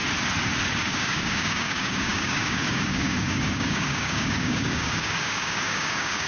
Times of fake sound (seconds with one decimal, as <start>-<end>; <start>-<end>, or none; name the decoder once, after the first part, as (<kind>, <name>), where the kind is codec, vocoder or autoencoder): 0.8-6.3 (codec, DAC)